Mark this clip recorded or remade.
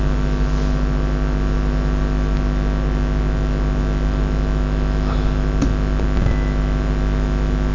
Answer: recorded